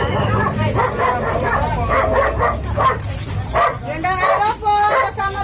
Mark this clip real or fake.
real